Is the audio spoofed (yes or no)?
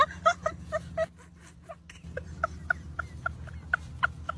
no